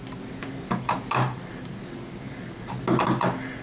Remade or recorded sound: recorded